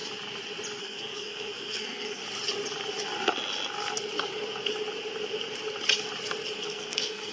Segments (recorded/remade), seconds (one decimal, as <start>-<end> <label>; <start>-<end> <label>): 0.0-0.8 recorded; 0.8-2.2 remade; 2.2-6.6 recorded; 6.6-7.3 remade